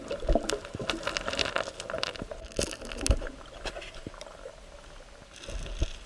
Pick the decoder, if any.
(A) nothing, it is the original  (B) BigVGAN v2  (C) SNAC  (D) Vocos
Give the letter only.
A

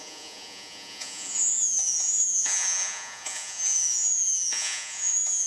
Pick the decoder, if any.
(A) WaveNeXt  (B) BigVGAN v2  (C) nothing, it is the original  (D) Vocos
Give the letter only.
D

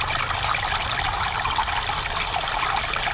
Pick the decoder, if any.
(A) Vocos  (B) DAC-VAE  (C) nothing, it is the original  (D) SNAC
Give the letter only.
C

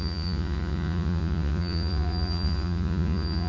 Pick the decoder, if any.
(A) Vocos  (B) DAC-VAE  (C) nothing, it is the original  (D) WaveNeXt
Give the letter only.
A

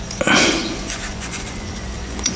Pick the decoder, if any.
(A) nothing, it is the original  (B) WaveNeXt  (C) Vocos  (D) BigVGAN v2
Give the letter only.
C